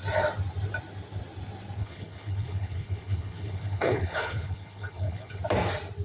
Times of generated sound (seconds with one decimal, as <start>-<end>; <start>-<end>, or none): 1.8-5.4